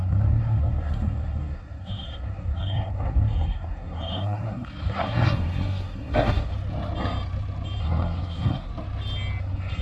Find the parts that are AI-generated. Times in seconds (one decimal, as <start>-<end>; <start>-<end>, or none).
0.0-6.5; 7.8-8.7; 9.4-9.8